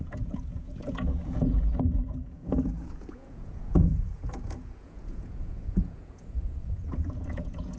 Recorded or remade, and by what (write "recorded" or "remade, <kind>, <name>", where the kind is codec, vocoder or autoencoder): remade, vocoder, Vocos